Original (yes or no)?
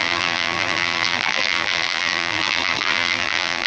no